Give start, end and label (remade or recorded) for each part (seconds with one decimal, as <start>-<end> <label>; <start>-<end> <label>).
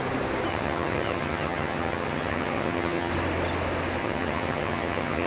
0.0-0.5 recorded; 0.5-3.1 remade; 3.1-4.0 recorded; 4.0-5.3 remade